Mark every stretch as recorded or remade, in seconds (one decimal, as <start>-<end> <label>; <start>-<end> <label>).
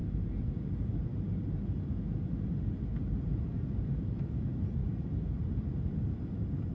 0.0-6.7 remade